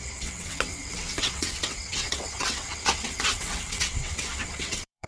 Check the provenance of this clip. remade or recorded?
remade